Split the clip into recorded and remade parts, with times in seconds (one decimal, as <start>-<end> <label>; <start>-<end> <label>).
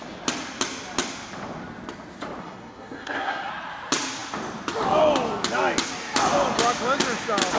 0.0-2.4 recorded; 2.4-3.5 remade; 3.5-7.6 recorded